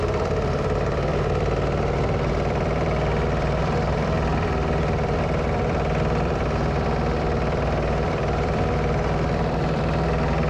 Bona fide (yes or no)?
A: no